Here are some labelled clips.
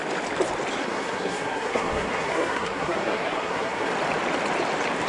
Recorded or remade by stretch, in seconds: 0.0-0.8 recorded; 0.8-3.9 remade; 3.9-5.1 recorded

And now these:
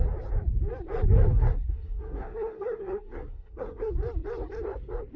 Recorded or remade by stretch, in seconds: 0.0-1.3 recorded; 1.3-3.9 remade; 3.9-5.2 recorded

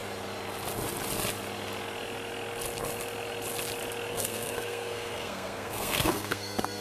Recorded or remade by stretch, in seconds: 0.0-4.1 recorded; 4.1-6.8 remade

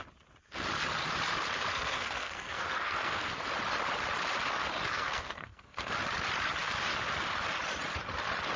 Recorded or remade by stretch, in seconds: 0.0-1.7 recorded; 1.7-3.3 remade; 3.3-4.9 recorded; 4.9-5.9 remade; 5.9-8.6 recorded